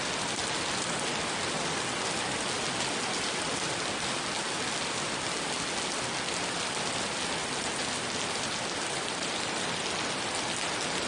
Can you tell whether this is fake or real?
real